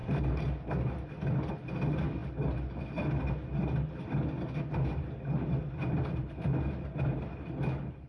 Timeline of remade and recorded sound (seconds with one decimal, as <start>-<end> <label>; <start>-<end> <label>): 0.0-8.1 recorded